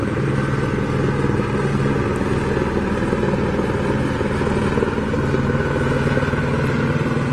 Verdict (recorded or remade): recorded